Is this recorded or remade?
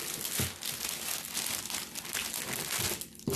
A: recorded